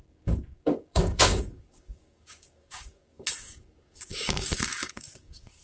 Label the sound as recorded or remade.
remade